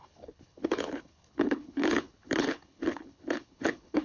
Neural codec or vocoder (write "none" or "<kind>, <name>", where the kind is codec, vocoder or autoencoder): codec, HILCodec